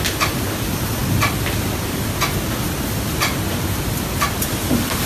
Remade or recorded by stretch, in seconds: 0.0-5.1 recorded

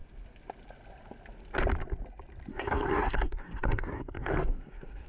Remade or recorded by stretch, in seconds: 0.0-2.5 recorded; 2.5-5.1 remade

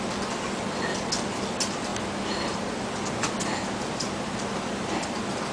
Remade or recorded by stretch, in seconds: 0.0-5.5 recorded